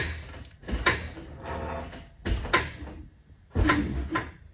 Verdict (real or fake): real